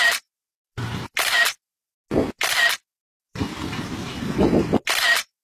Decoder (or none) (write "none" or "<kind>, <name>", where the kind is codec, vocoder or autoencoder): none